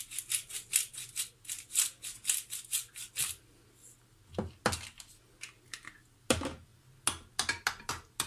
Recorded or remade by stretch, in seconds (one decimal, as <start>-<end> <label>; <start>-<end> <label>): 0.0-8.3 recorded